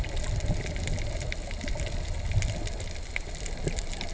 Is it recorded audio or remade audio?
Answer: recorded